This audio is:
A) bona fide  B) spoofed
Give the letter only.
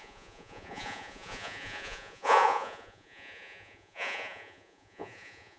B